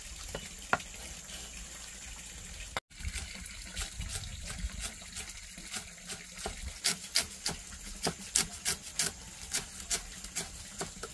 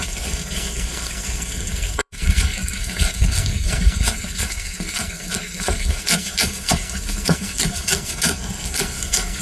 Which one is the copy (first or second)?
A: second